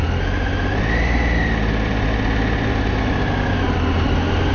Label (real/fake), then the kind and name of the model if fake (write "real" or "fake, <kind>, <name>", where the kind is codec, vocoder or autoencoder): real